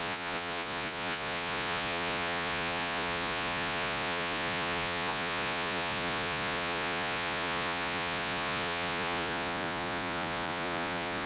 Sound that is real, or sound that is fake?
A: fake